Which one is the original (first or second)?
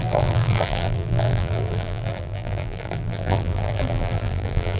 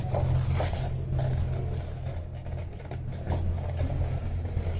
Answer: second